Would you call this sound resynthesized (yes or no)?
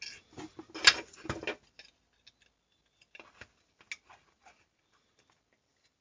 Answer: no